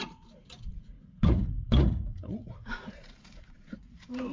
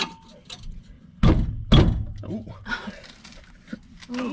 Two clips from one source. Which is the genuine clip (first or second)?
second